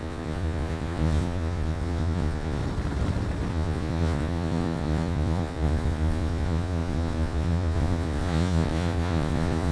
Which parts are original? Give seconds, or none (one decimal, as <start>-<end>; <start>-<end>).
2.6-3.5